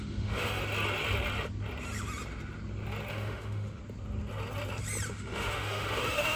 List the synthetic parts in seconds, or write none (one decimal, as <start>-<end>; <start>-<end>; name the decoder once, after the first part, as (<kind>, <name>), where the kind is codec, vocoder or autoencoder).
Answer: 0.0-0.6 (autoencoder, DAC-VAE); 3.1-3.8; 5.1-6.4